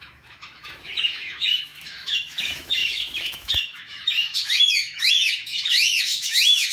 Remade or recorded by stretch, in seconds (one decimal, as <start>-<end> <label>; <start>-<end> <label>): 0.0-6.7 remade

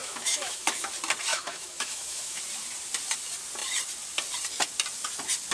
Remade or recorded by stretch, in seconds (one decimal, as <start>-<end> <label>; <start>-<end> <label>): 0.0-0.9 remade; 0.9-1.3 recorded; 1.3-2.4 remade; 2.4-5.5 recorded

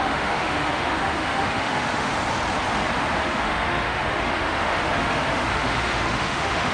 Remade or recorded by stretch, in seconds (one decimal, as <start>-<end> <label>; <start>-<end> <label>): 0.0-2.1 remade; 2.1-3.2 recorded; 3.2-6.7 remade

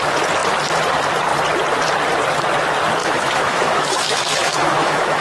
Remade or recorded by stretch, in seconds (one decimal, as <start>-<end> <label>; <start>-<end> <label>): 0.0-3.0 recorded; 3.0-5.2 remade